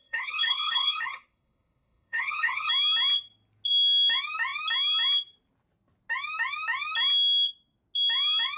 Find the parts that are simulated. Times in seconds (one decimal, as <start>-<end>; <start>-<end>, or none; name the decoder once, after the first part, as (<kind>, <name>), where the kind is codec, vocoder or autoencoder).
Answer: 0.0-2.7 (codec, HILCodec)